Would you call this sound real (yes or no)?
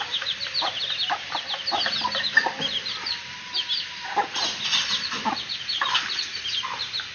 yes